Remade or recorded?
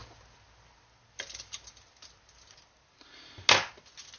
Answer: recorded